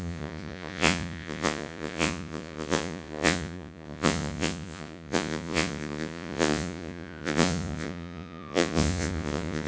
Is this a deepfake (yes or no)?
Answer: yes